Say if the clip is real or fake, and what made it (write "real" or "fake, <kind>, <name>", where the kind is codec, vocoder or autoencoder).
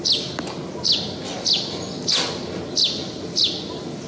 real